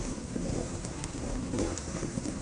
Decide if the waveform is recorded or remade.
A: remade